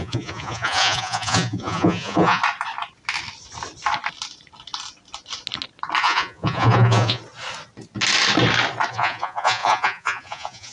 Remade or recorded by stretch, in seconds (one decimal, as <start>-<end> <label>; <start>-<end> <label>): 0.0-2.4 remade; 2.4-6.0 recorded; 6.0-7.2 remade; 7.2-8.9 recorded; 8.9-10.7 remade